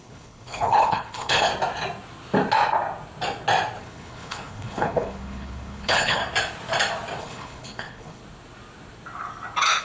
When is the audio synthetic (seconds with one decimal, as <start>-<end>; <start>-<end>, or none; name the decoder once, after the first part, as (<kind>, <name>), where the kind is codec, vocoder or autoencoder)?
0.0-1.5 (codec, HILCodec); 3.8-6.2; 7.2-8.2